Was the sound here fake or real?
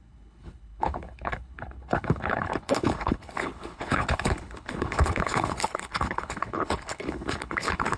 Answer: fake